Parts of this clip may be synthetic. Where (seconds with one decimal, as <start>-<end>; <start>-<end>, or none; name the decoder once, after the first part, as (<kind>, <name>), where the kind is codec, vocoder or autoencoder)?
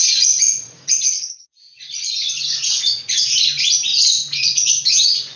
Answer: 0.0-3.2 (vocoder, Vocos); 3.9-5.4